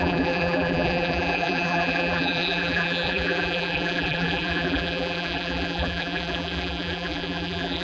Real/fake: fake